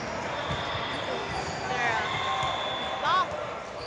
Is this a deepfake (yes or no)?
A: no